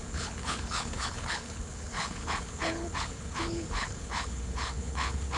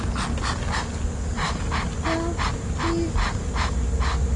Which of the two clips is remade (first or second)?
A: first